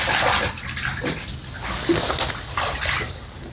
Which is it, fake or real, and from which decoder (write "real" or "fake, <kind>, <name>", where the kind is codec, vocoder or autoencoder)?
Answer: real